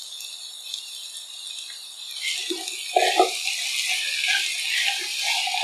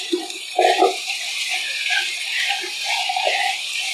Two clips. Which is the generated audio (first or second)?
second